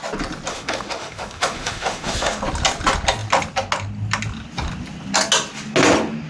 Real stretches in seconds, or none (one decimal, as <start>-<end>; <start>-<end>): 0.0-0.5; 2.4-6.3